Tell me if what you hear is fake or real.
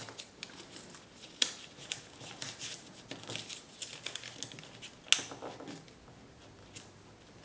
real